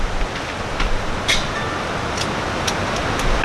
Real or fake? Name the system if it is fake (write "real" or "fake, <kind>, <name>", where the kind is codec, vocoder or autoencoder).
real